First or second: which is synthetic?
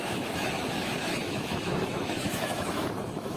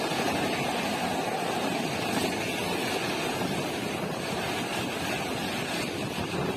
first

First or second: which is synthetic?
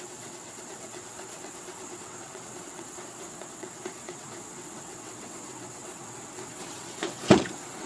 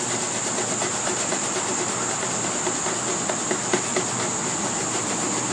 first